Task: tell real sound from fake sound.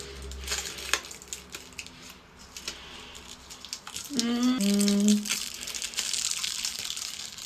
real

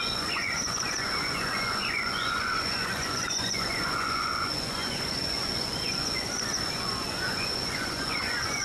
fake